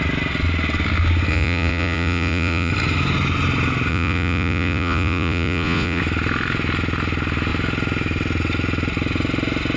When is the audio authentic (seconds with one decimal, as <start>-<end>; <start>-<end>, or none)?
0.0-1.3; 2.7-3.9; 6.0-9.8